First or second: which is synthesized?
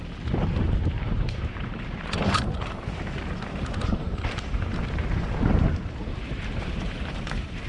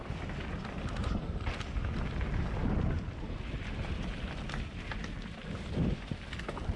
first